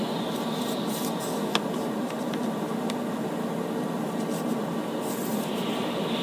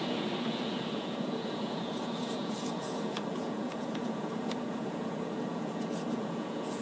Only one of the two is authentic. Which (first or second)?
first